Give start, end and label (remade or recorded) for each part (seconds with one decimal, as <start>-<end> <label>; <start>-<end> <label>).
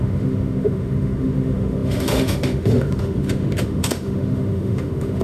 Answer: 0.0-5.2 remade